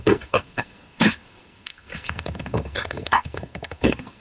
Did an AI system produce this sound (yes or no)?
yes